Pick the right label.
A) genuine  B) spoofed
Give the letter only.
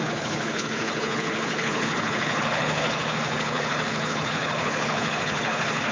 B